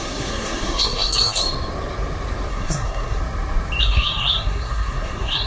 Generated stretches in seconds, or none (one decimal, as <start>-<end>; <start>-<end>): 0.0-1.4; 2.5-3.2; 3.8-5.5